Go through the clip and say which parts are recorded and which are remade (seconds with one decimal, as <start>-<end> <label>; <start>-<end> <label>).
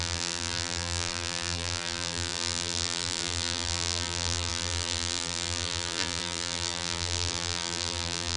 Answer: 0.0-8.4 remade